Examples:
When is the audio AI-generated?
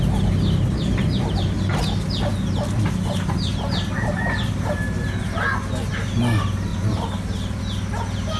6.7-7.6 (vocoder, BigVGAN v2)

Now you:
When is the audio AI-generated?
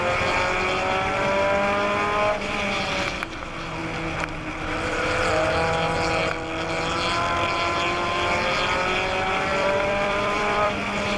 9.5-10.7 (vocoder, BigVGAN v2)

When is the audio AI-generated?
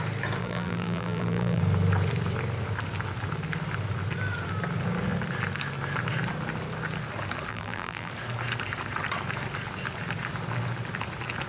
0.4-1.6 (vocoder, BigVGAN v2); 7.5-8.1